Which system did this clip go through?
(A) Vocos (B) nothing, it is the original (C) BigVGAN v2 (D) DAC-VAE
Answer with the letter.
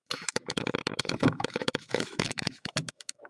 D